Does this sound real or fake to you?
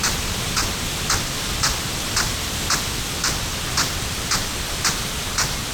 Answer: real